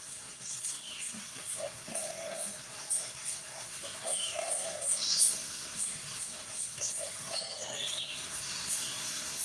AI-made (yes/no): yes